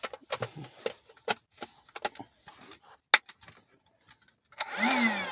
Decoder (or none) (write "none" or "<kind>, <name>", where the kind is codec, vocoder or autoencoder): none